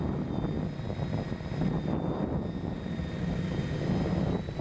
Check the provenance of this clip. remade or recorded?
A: remade